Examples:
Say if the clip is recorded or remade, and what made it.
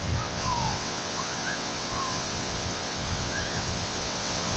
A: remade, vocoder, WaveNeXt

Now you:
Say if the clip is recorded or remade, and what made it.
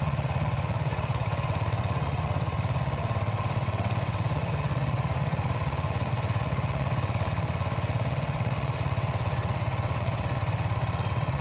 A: remade, vocoder, WaveNeXt